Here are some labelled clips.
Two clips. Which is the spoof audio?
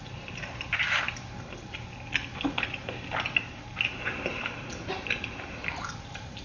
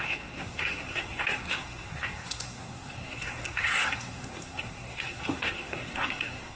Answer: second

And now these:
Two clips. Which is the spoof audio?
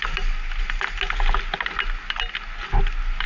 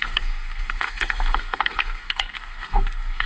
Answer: second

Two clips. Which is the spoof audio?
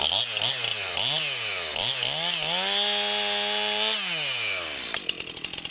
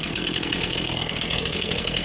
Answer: second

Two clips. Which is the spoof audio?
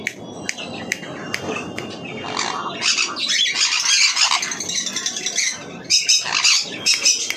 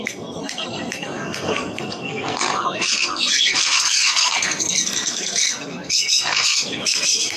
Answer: second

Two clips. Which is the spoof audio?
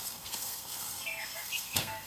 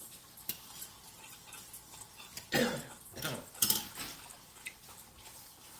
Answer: first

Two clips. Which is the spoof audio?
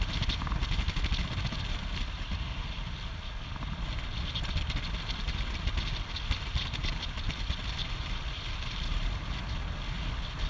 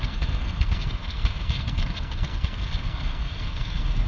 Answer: second